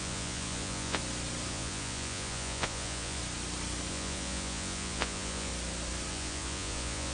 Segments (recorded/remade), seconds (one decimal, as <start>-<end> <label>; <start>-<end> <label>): 0.0-1.0 remade; 1.0-1.5 recorded; 1.5-3.2 remade; 3.2-3.9 recorded; 3.9-5.5 remade; 5.5-6.1 recorded; 6.1-7.1 remade